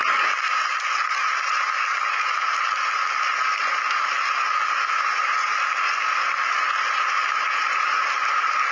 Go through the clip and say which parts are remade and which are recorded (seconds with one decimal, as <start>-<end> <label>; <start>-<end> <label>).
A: 0.0-8.7 recorded